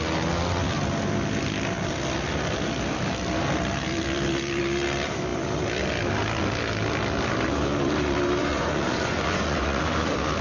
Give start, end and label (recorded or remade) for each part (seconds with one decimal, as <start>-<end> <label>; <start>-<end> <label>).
0.0-8.4 recorded; 8.4-9.8 remade; 9.8-10.4 recorded